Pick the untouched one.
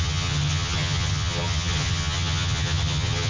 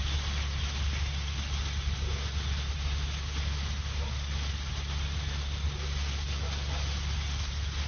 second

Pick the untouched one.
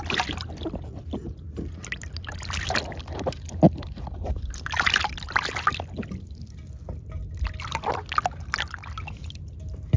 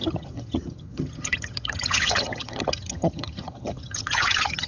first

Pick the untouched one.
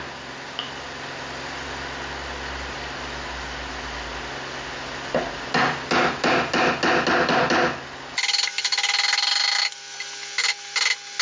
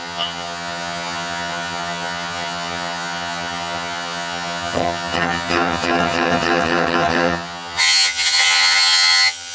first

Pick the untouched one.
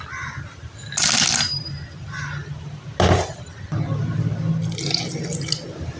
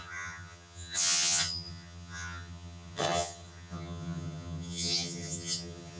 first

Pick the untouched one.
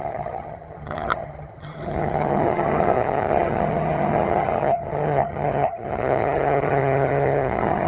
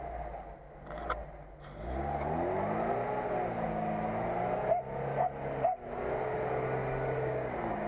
second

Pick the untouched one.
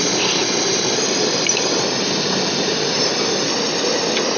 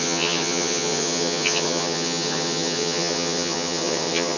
first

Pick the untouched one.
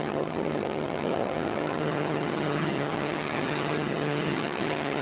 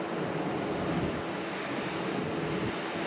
second